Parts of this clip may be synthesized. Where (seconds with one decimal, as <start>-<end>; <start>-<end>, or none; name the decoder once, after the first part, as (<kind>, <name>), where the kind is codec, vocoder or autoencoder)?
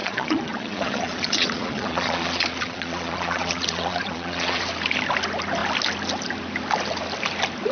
0.0-4.6 (vocoder, Vocos)